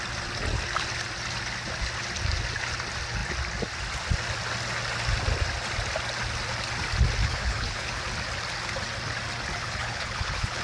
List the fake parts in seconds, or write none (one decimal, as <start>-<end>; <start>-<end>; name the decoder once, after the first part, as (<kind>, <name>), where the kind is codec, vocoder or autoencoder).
7.2-8.0 (codec, HILCodec); 9.6-10.6